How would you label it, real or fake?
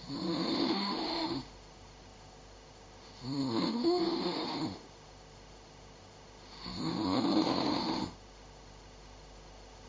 fake